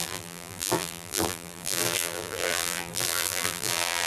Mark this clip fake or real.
fake